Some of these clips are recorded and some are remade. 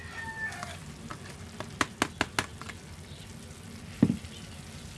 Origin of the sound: recorded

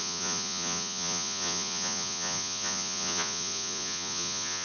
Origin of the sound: remade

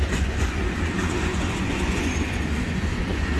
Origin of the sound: remade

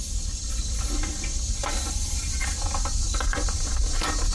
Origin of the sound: recorded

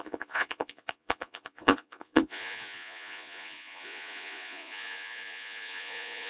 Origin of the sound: remade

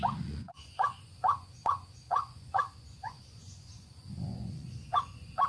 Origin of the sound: remade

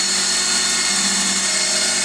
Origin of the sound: recorded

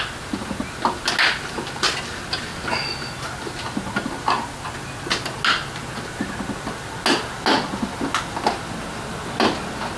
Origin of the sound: recorded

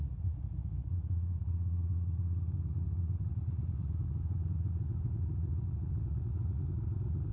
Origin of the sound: remade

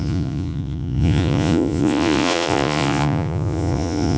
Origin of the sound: remade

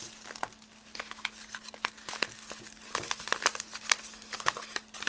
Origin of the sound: recorded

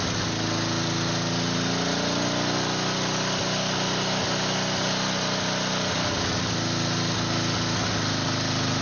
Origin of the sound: recorded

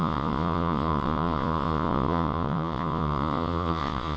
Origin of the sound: remade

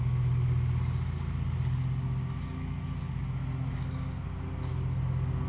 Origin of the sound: recorded